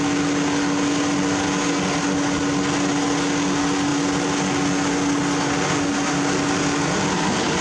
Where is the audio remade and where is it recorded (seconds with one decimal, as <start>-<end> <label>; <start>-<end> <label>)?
0.0-7.6 recorded